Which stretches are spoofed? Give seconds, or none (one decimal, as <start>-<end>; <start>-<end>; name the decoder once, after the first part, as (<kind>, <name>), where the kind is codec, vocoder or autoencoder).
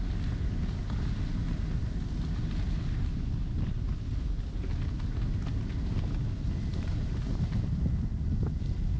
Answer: 6.7-7.5 (vocoder, BigVGAN v2)